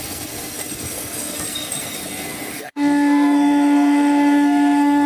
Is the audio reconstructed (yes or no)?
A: yes